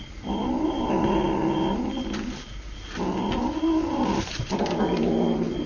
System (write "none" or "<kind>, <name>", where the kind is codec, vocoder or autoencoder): none